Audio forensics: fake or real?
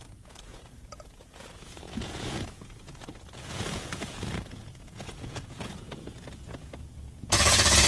fake